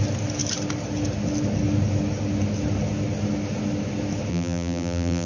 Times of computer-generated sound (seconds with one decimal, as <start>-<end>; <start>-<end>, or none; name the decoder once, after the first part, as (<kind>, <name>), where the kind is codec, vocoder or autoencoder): 4.3-5.3 (vocoder, BigVGAN v2)